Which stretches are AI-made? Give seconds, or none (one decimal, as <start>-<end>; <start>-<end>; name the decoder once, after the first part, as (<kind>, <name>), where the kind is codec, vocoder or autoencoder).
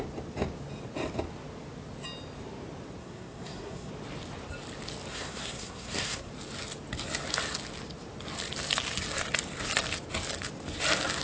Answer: 3.0-3.9 (codec, SNAC); 5.1-6.3